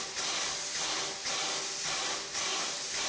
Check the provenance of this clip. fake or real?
real